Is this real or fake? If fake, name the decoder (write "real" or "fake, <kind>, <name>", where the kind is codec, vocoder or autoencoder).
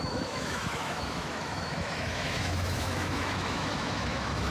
fake, autoencoder, DAC-VAE